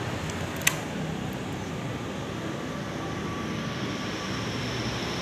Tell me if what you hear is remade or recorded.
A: recorded